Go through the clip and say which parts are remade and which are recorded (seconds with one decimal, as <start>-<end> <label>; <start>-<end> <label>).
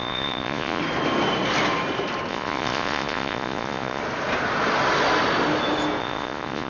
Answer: 0.0-0.8 remade; 0.8-2.3 recorded; 2.3-4.0 remade; 4.0-6.0 recorded; 6.0-6.7 remade